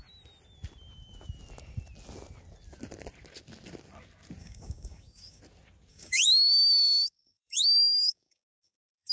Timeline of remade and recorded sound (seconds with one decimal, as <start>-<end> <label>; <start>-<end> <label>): 0.0-4.4 recorded; 4.4-5.4 remade; 5.4-5.9 recorded; 5.9-9.1 remade